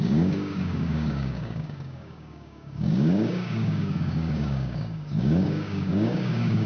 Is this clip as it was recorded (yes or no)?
no